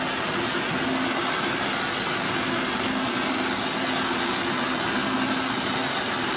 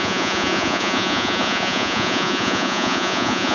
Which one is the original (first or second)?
first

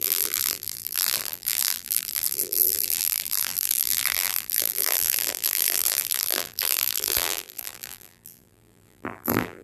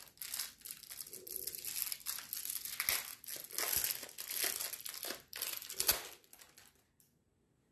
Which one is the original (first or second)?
second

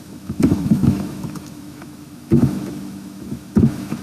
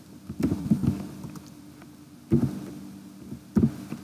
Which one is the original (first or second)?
second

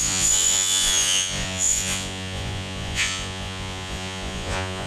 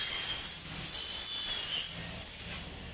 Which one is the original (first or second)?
second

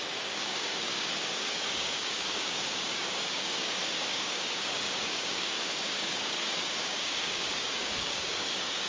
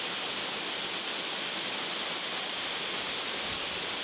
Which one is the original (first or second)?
second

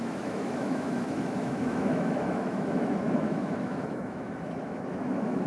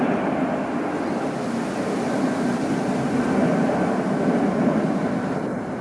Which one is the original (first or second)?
second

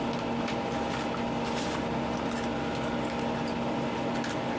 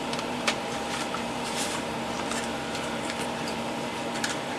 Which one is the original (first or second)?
first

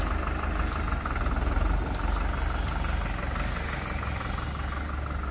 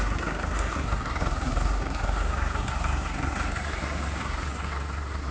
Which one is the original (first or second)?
first